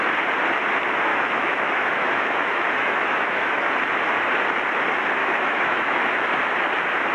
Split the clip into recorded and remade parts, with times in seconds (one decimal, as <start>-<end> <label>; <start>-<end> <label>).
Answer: 0.0-1.1 recorded; 1.1-3.6 remade; 3.6-5.2 recorded; 5.2-6.3 remade; 6.3-7.1 recorded